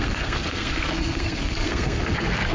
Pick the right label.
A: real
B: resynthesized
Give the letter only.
B